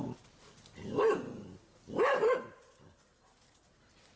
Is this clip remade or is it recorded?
recorded